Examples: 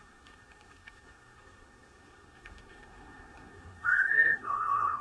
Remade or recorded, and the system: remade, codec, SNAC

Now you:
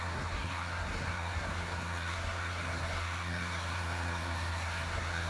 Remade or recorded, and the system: remade, codec, SNAC